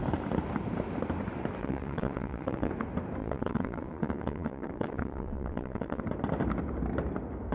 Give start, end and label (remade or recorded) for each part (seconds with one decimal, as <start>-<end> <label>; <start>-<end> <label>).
0.0-1.6 recorded; 1.6-2.7 remade; 2.7-3.2 recorded; 3.2-6.0 remade; 6.0-7.5 recorded